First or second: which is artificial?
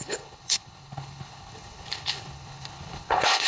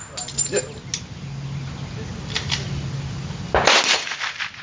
first